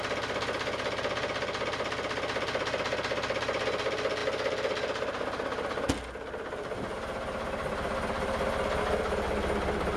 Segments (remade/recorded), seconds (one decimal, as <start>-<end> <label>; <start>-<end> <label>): 0.0-10.0 recorded